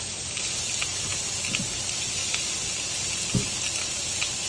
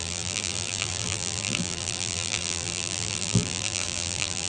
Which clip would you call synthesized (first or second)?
second